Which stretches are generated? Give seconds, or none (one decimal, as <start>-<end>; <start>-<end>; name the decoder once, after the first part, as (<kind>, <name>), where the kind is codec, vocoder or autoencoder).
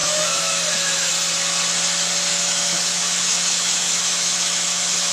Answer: 0.0-1.1 (autoencoder, DAC-VAE); 2.3-5.1